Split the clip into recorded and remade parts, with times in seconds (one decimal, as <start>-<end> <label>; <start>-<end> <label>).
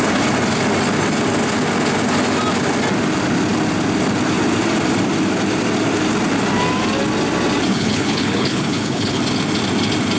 0.0-7.7 recorded; 7.7-9.2 remade; 9.2-10.2 recorded